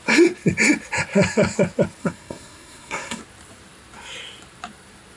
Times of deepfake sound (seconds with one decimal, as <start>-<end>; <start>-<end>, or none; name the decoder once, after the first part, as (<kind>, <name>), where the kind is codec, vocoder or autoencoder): 2.0-3.2 (codec, SNAC)